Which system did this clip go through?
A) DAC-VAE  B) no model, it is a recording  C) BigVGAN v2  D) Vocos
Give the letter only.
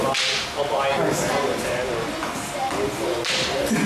B